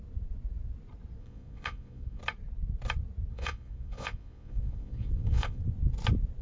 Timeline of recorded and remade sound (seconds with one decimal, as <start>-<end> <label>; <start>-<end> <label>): 0.0-1.2 recorded; 1.2-2.2 remade; 2.2-3.3 recorded; 3.3-5.6 remade; 5.6-6.4 recorded